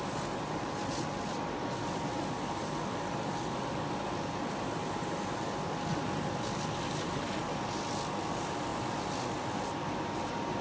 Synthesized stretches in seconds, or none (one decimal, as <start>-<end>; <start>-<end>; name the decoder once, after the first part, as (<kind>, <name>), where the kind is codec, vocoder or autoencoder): none